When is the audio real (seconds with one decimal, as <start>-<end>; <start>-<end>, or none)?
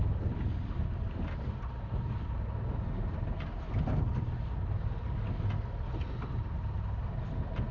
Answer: 0.0-7.7